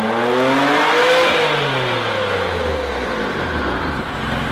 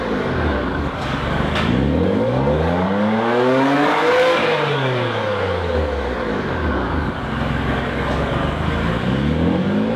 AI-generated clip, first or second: second